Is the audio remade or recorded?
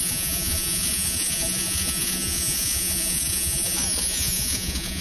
remade